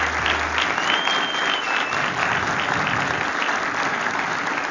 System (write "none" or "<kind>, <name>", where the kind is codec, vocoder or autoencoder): none